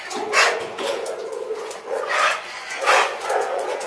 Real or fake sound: fake